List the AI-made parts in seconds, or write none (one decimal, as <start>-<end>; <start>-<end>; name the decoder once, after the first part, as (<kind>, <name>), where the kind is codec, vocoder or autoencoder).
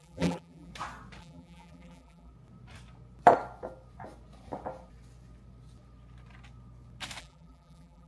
0.0-0.7 (vocoder, BigVGAN v2); 1.2-2.3; 7.2-8.1